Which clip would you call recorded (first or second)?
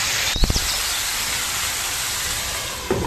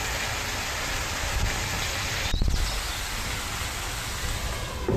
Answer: second